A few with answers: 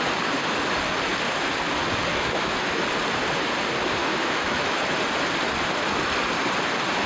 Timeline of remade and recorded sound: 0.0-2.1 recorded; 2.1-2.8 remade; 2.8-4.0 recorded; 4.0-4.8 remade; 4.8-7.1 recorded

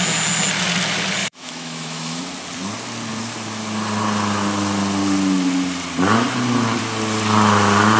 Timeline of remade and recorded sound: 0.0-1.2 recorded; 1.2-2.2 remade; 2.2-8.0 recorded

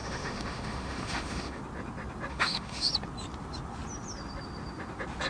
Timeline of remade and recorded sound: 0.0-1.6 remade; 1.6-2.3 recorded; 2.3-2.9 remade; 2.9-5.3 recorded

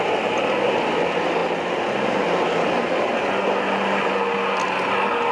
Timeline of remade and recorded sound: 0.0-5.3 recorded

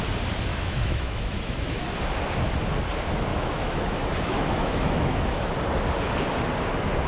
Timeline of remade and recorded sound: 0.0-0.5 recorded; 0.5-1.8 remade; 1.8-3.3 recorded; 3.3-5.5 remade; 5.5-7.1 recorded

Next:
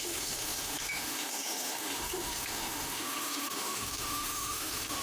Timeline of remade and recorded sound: 0.0-5.0 remade

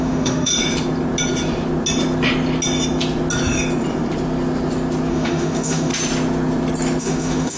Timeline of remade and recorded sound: 0.0-0.5 remade; 0.5-5.1 recorded; 5.1-5.9 remade; 5.9-7.0 recorded; 7.0-7.6 remade

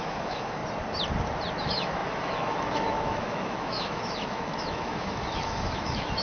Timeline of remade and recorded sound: 0.0-0.6 remade; 0.6-1.6 recorded; 1.6-6.2 remade